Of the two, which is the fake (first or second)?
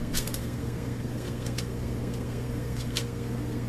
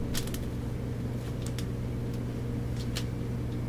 first